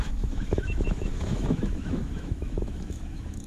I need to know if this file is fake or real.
fake